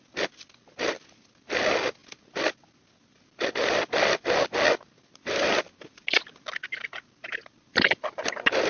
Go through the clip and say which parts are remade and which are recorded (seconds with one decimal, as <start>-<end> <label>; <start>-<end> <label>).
0.0-8.7 recorded